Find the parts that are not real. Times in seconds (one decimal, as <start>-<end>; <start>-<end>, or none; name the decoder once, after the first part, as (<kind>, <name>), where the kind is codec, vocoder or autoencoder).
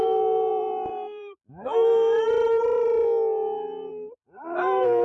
0.0-3.0 (vocoder, BigVGAN v2); 3.9-5.0